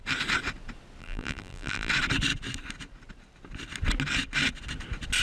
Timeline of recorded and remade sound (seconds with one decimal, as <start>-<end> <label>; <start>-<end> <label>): 0.0-1.0 recorded; 1.0-1.9 remade; 1.9-5.2 recorded